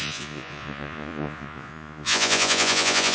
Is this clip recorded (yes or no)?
no